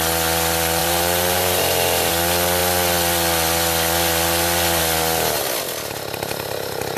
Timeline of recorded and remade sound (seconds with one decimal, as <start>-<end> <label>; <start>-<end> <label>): 0.0-0.8 recorded; 0.8-2.1 remade; 2.1-7.0 recorded